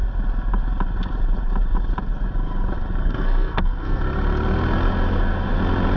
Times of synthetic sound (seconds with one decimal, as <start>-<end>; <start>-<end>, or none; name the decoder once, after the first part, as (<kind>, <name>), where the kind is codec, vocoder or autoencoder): 3.0-4.0 (codec, SNAC)